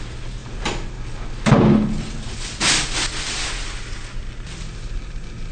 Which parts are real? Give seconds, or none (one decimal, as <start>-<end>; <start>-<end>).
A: 0.0-5.5